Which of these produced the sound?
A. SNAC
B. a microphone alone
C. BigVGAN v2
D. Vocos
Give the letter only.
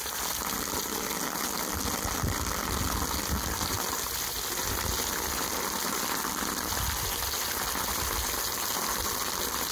B